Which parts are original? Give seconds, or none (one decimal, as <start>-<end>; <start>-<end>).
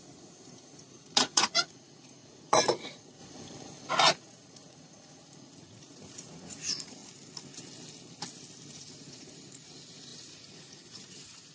3.2-3.9; 7.0-8.8